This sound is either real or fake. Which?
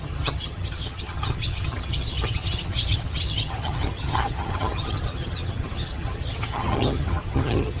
fake